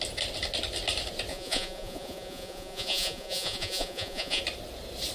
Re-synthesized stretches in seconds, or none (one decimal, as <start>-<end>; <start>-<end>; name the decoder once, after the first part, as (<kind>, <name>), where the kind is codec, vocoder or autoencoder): 1.3-4.4 (vocoder, Vocos)